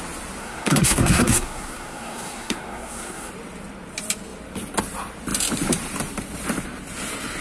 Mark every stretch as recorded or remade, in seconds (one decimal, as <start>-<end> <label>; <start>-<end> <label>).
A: 0.0-0.4 recorded; 0.4-3.3 remade; 3.3-7.4 recorded